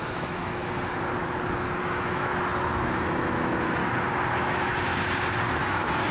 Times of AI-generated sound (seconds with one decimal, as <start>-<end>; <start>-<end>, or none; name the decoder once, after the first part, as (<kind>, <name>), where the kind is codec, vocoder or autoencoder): 0.0-0.6 (autoencoder, DAC-VAE); 1.8-2.3; 2.8-3.8; 4.4-4.9; 5.6-6.1